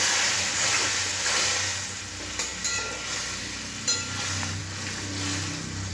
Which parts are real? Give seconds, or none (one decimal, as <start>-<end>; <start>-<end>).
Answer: 0.0-5.9